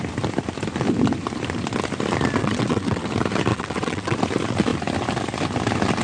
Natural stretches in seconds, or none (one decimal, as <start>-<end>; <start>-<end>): 0.0-2.4; 3.1-3.5; 4.2-6.0